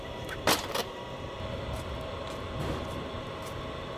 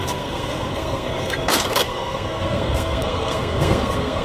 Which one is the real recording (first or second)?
first